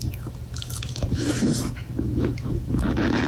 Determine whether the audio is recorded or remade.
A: remade